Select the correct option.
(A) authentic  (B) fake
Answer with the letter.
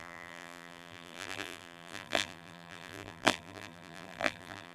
B